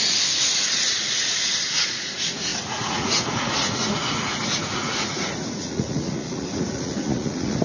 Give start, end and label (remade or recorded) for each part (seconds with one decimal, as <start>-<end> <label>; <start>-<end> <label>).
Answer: 0.0-7.6 remade